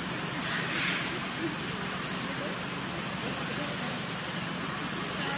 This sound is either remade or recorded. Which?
recorded